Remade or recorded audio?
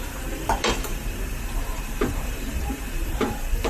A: remade